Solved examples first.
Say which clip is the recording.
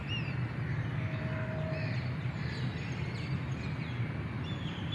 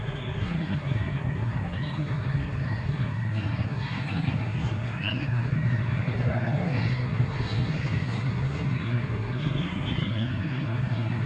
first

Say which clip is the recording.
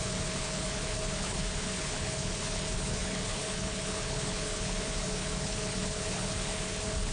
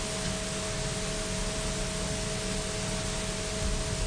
second